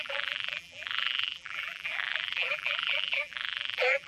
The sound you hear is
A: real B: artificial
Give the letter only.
B